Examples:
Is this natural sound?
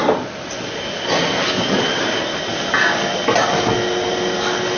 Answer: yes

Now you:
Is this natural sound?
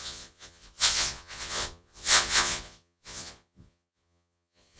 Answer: no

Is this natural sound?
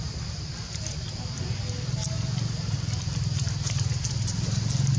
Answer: yes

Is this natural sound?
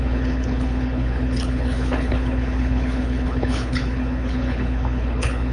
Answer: no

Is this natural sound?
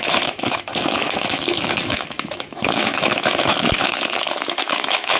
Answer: no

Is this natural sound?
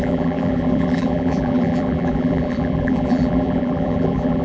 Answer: no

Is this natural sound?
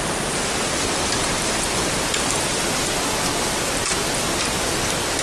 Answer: yes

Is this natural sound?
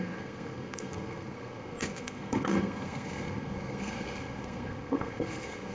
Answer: no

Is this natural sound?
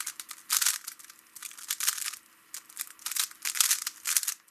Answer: yes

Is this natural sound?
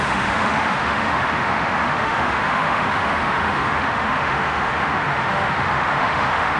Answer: no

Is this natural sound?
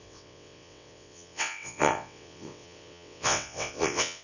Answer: no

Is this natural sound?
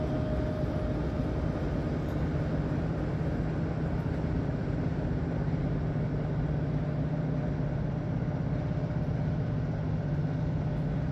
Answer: yes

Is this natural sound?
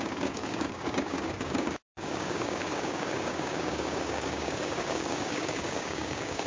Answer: no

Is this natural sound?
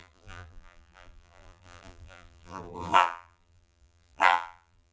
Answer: no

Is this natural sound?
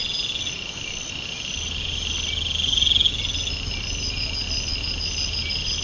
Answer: yes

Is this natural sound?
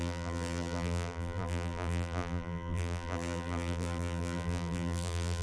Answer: no